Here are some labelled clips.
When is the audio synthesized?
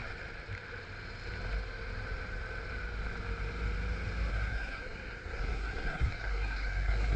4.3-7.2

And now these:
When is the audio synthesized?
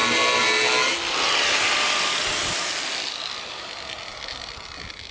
3.1-4.1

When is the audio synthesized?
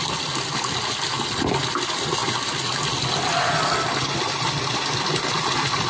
none